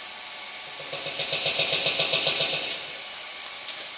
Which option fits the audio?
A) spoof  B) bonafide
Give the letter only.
B